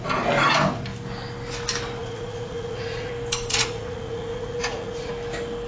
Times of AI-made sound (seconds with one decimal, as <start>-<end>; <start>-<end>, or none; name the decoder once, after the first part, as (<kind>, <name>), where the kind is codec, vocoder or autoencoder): 2.0-3.1 (vocoder, Vocos); 3.5-5.1